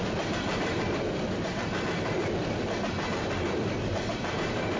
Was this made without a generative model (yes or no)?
yes